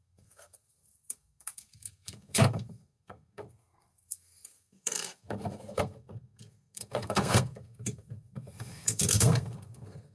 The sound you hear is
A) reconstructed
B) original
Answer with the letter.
A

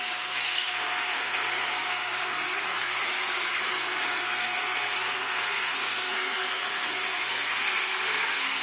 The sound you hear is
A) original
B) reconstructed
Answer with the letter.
B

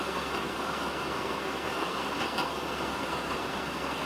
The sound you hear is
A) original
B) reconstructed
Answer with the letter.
B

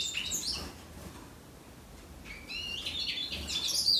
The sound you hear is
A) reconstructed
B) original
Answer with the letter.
B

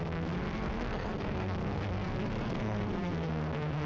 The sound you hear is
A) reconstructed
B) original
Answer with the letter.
A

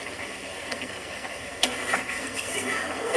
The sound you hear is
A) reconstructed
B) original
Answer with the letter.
A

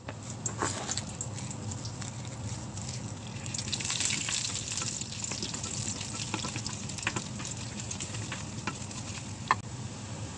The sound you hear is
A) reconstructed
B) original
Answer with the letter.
B